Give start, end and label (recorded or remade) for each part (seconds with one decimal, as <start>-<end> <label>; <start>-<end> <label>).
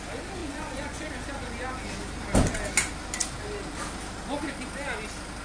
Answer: 0.0-0.4 recorded; 0.4-1.1 remade; 1.1-5.4 recorded